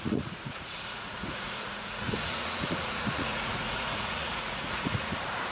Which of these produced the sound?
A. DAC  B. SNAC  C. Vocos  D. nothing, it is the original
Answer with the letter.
C